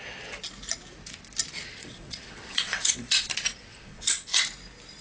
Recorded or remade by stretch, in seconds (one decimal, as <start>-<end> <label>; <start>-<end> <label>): 0.0-1.8 recorded; 1.8-3.3 remade; 3.3-3.7 recorded; 3.7-4.4 remade; 4.4-5.0 recorded